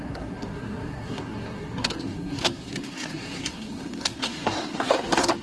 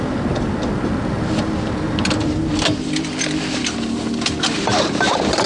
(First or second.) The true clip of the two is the second